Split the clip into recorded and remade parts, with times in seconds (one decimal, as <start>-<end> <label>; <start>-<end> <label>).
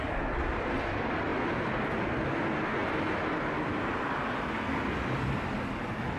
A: 0.0-6.2 recorded